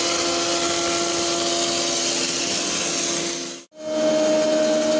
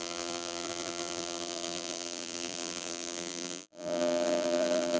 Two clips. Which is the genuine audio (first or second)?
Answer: first